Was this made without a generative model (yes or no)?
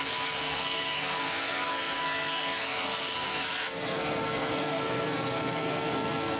no